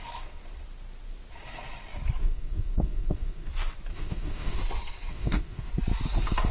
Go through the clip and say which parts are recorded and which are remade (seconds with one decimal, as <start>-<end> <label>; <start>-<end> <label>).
0.0-2.2 recorded; 2.2-3.5 remade; 3.5-3.9 recorded; 3.9-4.6 remade; 4.6-5.1 recorded; 5.1-5.7 remade; 5.7-6.5 recorded